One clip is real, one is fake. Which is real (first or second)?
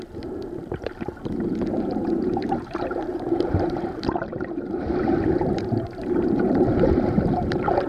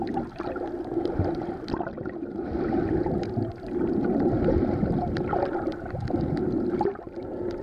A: second